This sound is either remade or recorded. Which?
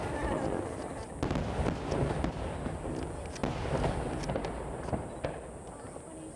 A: recorded